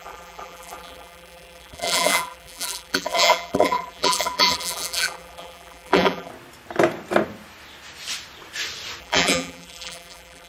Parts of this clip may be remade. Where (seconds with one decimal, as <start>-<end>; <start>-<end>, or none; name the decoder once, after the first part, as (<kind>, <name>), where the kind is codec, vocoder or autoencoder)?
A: 0.0-6.3 (vocoder, BigVGAN v2); 9.0-10.5